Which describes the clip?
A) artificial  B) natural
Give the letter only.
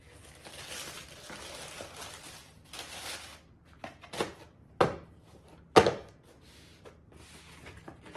B